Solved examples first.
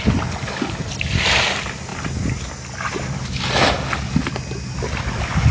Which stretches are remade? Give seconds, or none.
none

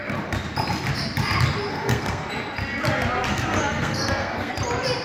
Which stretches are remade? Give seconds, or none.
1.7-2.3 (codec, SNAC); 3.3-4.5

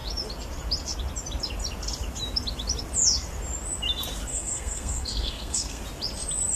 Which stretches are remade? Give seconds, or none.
4.3-5.8 (codec, SNAC)

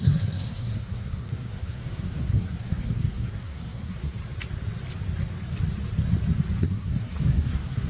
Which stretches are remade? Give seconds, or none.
0.0-4.2 (codec, SNAC); 6.6-7.9

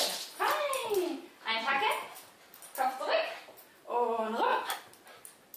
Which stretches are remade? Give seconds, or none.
none

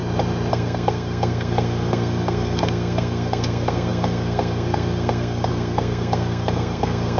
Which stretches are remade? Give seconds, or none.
0.5-7.2 (codec, SNAC)